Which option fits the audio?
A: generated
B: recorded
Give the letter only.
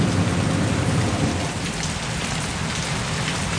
B